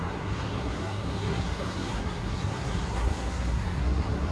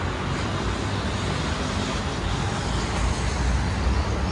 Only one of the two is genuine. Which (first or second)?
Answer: second